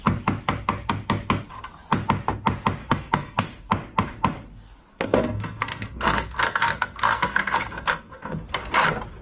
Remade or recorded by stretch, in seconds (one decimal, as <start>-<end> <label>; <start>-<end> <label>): 0.0-2.8 recorded; 2.8-3.7 remade; 3.7-4.9 recorded; 4.9-8.4 remade; 8.4-9.2 recorded